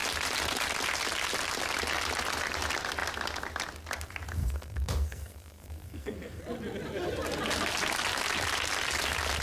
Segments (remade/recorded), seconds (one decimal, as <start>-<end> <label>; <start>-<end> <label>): 0.0-4.4 recorded; 4.4-6.4 remade; 6.4-9.4 recorded